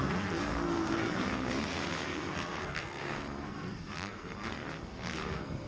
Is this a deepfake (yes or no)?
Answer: yes